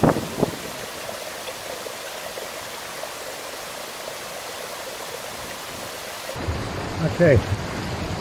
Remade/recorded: recorded